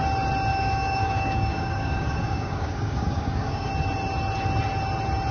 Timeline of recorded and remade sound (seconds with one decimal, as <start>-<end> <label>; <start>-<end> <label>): 0.0-0.5 recorded; 0.5-3.7 remade; 3.7-5.3 recorded